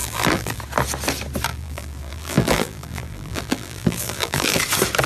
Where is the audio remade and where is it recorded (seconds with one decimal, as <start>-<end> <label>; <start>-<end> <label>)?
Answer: 0.0-0.6 remade; 0.6-1.5 recorded; 1.5-4.6 remade; 4.6-5.1 recorded